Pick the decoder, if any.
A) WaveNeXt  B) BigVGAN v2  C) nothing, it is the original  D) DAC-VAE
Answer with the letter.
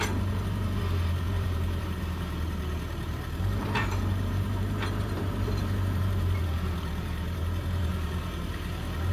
B